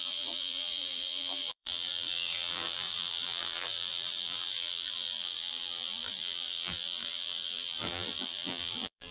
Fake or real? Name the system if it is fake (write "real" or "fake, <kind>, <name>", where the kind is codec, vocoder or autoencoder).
fake, vocoder, BigVGAN v2